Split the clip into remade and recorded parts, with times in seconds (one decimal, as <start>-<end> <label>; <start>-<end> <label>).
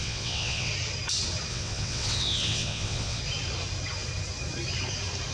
0.0-0.7 remade; 0.7-1.5 recorded; 1.5-3.2 remade; 3.2-5.3 recorded